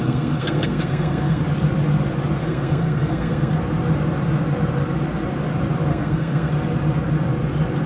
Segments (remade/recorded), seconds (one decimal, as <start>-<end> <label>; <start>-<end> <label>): 0.0-1.4 remade; 1.4-2.4 recorded; 2.4-3.5 remade; 3.5-5.9 recorded; 5.9-6.5 remade; 6.5-7.9 recorded

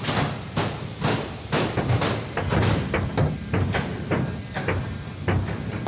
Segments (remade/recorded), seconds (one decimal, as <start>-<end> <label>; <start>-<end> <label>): 0.0-5.9 recorded

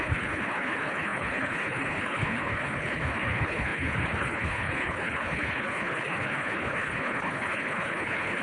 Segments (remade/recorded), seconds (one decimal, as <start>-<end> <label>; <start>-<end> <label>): 0.0-8.4 remade

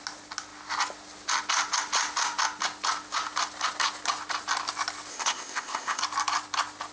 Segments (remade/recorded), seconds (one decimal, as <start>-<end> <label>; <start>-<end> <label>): 0.0-5.1 recorded; 5.1-6.0 remade; 6.0-6.9 recorded

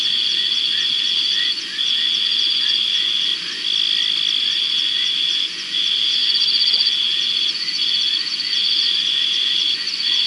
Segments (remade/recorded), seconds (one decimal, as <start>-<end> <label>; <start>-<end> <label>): 0.0-3.3 remade; 3.3-4.4 recorded; 4.4-10.3 remade